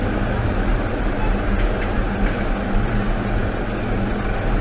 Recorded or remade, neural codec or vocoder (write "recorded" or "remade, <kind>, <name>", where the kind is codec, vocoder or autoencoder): recorded